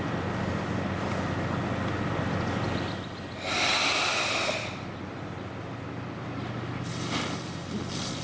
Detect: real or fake real